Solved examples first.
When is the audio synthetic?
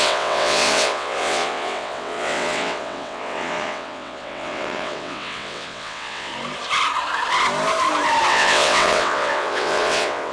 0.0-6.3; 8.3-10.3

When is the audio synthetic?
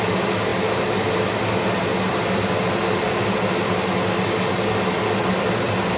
none